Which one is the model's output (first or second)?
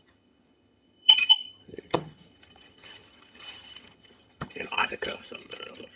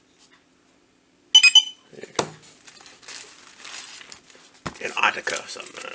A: first